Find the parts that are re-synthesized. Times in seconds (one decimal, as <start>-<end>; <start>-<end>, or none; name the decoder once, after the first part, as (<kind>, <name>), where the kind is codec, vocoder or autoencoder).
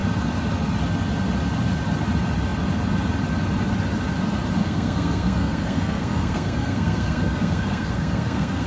4.6-8.7 (codec, SNAC)